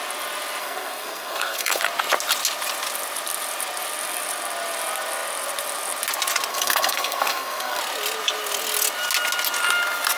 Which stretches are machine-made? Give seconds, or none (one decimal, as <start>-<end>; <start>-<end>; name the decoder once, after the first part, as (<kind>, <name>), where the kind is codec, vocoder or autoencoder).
0.6-1.8 (codec, SNAC); 6.5-7.8